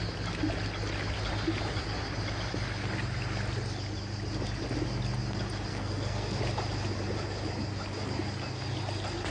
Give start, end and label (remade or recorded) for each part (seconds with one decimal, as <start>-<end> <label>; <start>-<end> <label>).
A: 0.0-5.7 recorded; 5.7-6.4 remade; 6.4-9.3 recorded